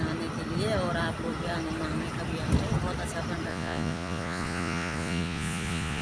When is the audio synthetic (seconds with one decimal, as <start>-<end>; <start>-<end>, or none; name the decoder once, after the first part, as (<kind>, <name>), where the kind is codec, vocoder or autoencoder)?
3.5-6.0 (vocoder, Vocos)